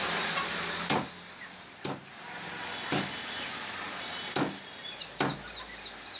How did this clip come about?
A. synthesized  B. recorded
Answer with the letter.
B